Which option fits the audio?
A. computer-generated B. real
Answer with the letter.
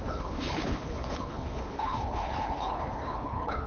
A